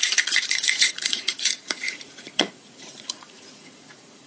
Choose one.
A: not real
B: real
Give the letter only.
A